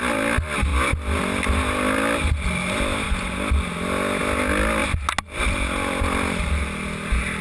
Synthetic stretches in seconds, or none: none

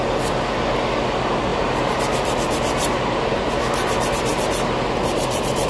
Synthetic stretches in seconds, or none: 1.5-3.5 (vocoder, BigVGAN v2); 4.3-5.7

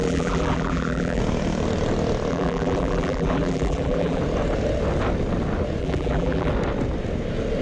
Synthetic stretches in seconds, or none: 0.0-1.2 (vocoder, BigVGAN v2); 2.3-4.2; 5.8-6.5

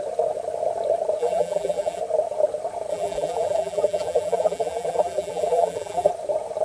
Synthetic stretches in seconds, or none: 1.2-2.0 (vocoder, BigVGAN v2); 2.9-6.1

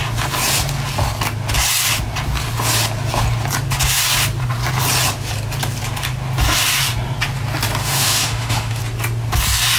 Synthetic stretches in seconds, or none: 7.8-8.8 (autoencoder, DAC-VAE)